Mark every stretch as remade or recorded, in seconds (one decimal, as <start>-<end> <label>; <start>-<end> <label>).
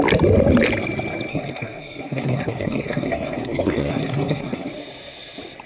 0.0-1.3 recorded; 1.3-4.7 remade; 4.7-5.7 recorded